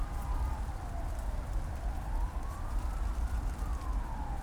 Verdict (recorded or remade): remade